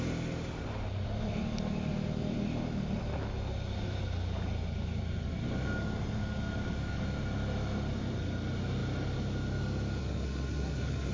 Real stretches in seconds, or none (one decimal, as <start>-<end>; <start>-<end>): 0.0-10.0